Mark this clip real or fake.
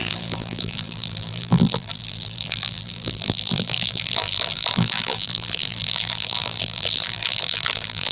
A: fake